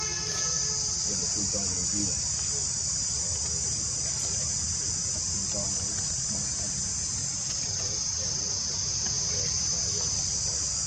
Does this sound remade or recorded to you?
recorded